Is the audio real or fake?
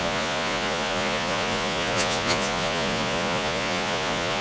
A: fake